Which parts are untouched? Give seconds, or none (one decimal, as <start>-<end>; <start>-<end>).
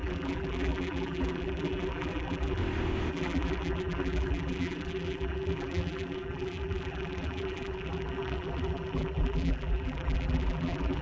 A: 2.6-3.1